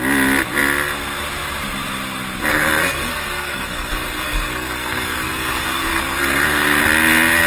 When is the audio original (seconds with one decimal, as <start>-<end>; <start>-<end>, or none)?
0.0-2.5; 6.8-7.5

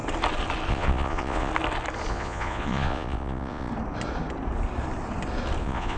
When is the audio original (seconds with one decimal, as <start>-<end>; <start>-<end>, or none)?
0.0-0.7; 1.5-2.1; 3.7-5.6

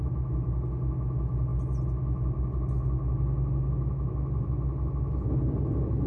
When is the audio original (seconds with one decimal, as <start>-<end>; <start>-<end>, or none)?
0.0-6.1

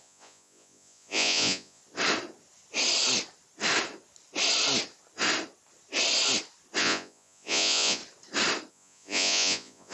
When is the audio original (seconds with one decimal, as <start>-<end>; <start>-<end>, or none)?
1.8-6.8; 8.0-8.7

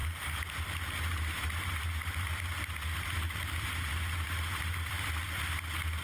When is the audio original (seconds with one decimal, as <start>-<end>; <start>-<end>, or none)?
0.0-6.0

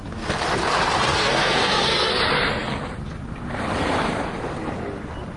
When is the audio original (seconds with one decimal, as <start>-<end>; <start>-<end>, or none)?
0.0-1.1; 2.2-5.4

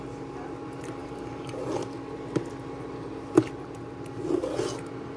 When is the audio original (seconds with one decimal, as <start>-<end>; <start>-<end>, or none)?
0.0-1.0; 1.6-5.2

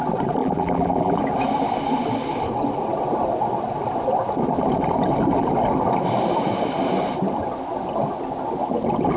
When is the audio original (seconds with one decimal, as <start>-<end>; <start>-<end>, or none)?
0.0-0.4; 1.2-9.2